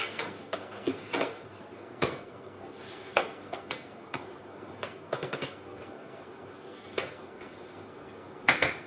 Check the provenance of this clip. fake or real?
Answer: fake